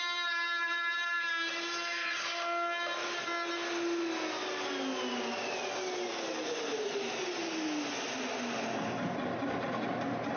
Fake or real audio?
real